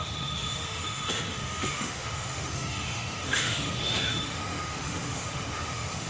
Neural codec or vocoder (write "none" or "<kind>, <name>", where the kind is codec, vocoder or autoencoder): autoencoder, DAC-VAE